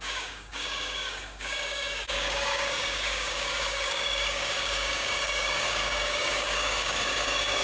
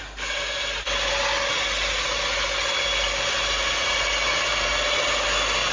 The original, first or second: second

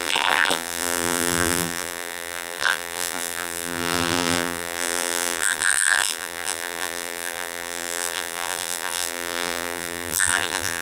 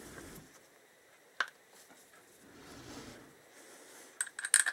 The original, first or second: second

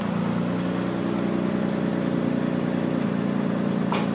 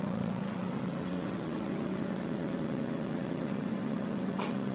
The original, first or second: first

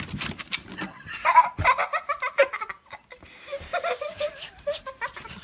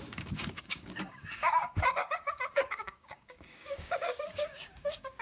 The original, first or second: first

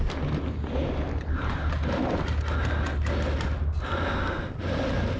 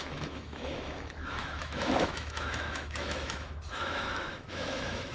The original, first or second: first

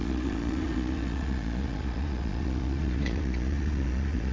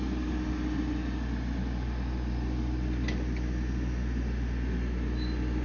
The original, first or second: second